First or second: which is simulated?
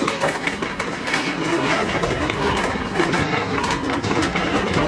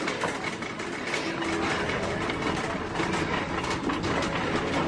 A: first